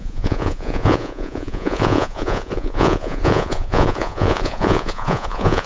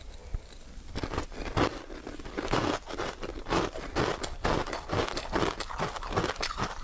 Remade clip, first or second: first